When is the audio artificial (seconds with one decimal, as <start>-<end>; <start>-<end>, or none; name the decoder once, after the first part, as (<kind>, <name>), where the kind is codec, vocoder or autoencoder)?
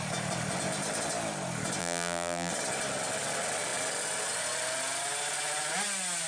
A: 1.8-2.5 (vocoder, BigVGAN v2)